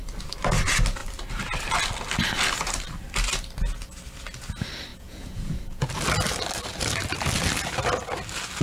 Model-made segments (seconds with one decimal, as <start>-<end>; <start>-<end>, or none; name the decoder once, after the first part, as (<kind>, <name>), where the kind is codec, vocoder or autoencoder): 4.9-5.9 (vocoder, Vocos)